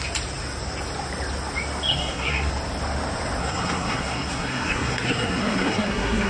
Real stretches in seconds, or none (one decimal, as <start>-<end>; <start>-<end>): 0.0-1.9; 2.5-3.4

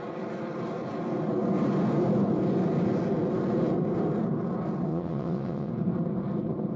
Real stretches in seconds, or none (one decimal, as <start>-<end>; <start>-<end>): 0.0-4.9; 5.7-6.8